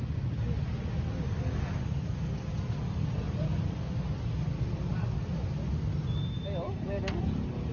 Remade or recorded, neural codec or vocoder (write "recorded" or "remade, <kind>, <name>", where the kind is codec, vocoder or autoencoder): recorded